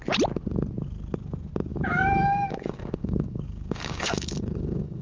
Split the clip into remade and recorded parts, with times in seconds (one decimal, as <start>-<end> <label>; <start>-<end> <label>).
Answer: 0.0-1.7 recorded; 1.7-5.0 remade